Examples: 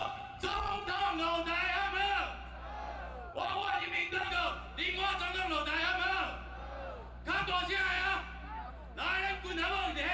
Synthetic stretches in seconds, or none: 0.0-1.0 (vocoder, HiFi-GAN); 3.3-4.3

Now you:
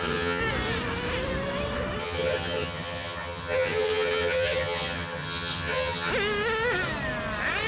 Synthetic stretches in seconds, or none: 0.0-0.4 (vocoder, HiFi-GAN); 2.0-6.1

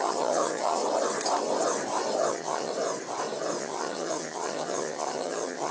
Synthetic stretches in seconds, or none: 0.0-0.8 (vocoder, HiFi-GAN); 2.3-2.7; 3.6-5.7

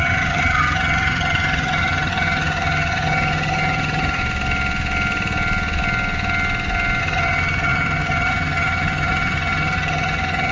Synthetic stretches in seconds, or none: 0.0-4.2 (vocoder, HiFi-GAN); 7.0-10.5

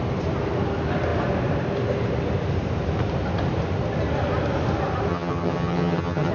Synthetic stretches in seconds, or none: 5.1-6.3 (vocoder, HiFi-GAN)